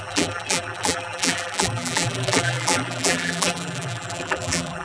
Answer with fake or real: fake